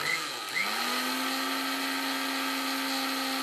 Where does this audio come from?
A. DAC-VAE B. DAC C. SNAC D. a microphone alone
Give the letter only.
D